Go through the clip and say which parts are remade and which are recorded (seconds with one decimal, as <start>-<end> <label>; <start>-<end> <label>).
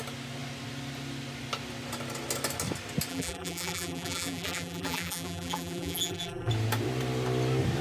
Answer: 0.0-3.1 recorded; 3.1-6.5 remade; 6.5-7.8 recorded